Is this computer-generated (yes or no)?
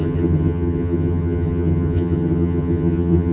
yes